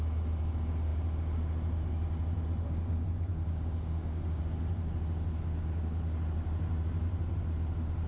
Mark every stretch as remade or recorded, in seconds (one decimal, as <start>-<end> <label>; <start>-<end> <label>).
0.0-3.3 recorded; 3.3-4.4 remade; 4.4-8.1 recorded